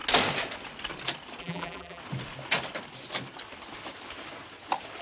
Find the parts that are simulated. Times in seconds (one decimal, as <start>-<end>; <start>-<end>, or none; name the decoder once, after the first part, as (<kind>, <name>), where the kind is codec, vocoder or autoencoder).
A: 1.4-2.0 (vocoder, BigVGAN v2)